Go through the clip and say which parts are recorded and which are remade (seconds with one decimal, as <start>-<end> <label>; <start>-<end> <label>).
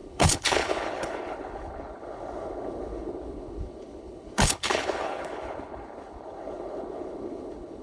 0.0-7.8 remade